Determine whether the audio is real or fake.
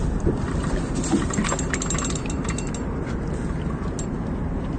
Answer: real